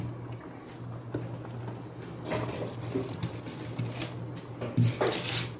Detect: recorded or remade recorded